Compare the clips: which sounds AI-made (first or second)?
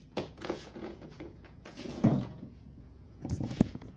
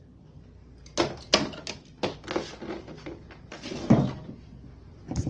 first